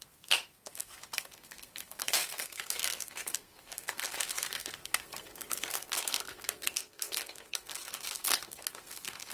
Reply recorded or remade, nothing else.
remade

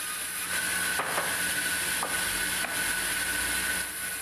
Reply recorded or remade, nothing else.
recorded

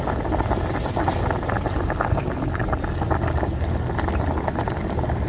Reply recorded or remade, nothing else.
recorded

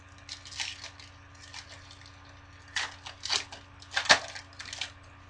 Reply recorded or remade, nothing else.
recorded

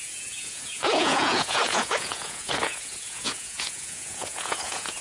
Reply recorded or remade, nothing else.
remade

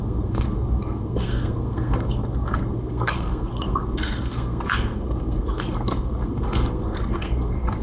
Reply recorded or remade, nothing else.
remade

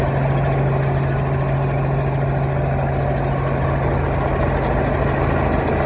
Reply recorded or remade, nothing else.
recorded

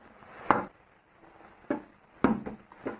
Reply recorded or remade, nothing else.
recorded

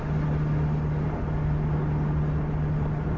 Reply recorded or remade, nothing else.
recorded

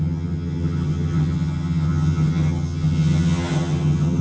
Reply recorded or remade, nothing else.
remade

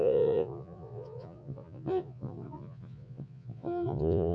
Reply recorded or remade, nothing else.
remade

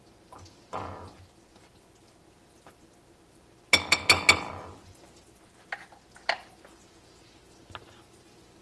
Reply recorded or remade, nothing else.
recorded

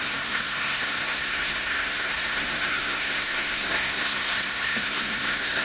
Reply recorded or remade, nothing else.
remade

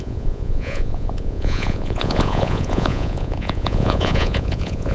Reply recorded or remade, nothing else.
remade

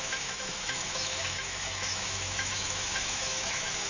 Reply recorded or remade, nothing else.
remade